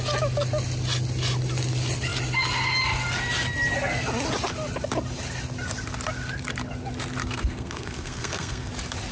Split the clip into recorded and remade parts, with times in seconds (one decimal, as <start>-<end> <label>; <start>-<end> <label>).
0.0-7.2 recorded; 7.2-8.7 remade; 8.7-9.1 recorded